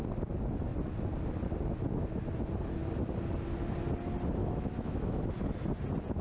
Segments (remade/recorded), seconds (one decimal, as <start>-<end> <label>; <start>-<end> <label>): 0.0-4.4 recorded; 4.4-5.2 remade; 5.2-6.2 recorded